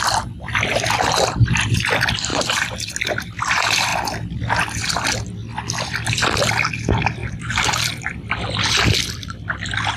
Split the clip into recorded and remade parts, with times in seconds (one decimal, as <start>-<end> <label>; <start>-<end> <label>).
0.0-2.3 recorded; 2.3-2.9 remade; 2.9-7.2 recorded; 7.2-7.9 remade; 7.9-10.0 recorded

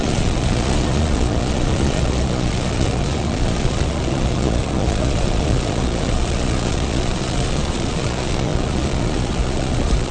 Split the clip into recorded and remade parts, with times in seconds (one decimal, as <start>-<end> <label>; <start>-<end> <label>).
0.0-10.1 remade

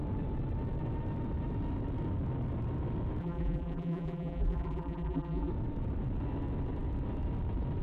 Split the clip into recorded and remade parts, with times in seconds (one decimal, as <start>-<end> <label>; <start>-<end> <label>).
0.0-3.2 recorded; 3.2-5.5 remade; 5.5-7.8 recorded

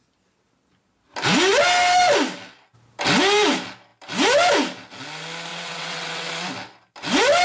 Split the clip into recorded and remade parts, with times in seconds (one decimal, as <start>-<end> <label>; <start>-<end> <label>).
0.0-5.5 recorded; 5.5-6.3 remade; 6.3-7.4 recorded

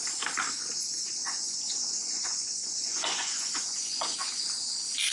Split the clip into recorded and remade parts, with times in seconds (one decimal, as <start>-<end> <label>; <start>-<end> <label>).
0.0-1.2 recorded; 1.2-4.3 remade; 4.3-5.1 recorded

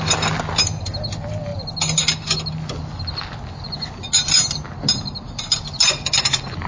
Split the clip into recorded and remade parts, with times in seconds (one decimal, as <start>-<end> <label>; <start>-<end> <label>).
0.0-6.7 recorded

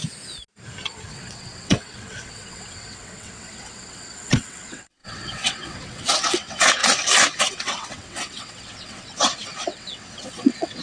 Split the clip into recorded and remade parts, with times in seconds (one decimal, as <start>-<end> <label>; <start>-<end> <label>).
0.0-1.1 recorded; 1.1-6.8 remade; 6.8-7.4 recorded; 7.4-10.8 remade